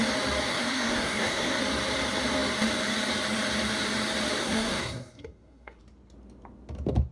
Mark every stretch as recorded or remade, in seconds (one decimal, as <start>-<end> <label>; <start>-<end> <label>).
0.0-0.5 recorded; 0.5-1.6 remade; 1.6-4.4 recorded; 4.4-5.8 remade; 5.8-7.1 recorded